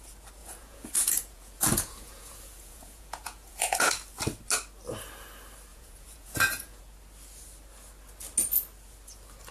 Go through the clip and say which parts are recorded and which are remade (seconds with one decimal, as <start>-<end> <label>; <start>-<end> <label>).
0.0-0.4 recorded; 0.4-3.9 remade; 3.9-5.7 recorded; 5.7-6.8 remade; 6.8-9.5 recorded